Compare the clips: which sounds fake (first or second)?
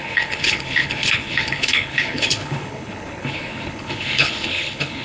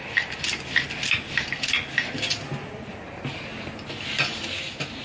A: first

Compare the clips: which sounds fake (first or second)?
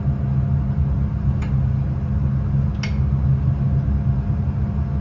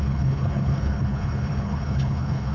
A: second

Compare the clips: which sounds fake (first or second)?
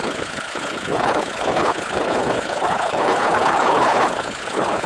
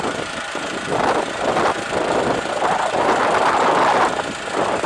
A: first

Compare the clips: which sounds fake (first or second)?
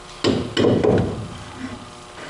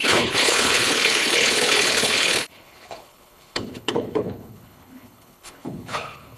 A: second